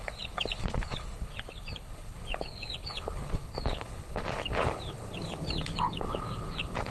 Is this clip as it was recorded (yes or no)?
no